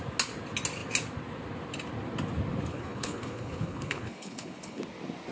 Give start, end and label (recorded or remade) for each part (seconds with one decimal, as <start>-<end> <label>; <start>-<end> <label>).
0.0-2.7 recorded; 2.7-4.8 remade; 4.8-5.3 recorded